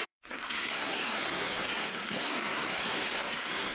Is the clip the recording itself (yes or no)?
no